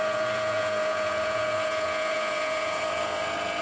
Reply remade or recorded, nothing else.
remade